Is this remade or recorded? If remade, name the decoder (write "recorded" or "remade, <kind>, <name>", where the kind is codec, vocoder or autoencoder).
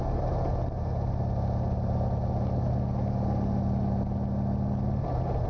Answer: recorded